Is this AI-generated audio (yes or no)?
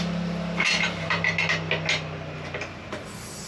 no